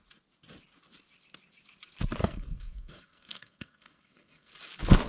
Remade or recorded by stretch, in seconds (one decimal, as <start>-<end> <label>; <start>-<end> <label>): 0.0-2.2 recorded; 2.2-4.5 remade; 4.5-5.1 recorded